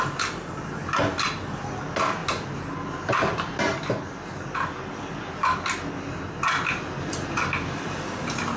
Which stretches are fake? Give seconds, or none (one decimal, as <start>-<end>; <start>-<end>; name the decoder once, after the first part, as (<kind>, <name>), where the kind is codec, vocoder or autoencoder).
none